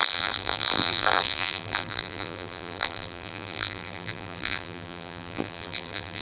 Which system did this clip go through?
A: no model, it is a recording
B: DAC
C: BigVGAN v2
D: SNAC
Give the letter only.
C